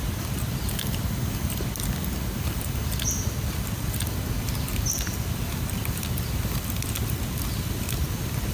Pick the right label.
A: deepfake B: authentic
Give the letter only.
B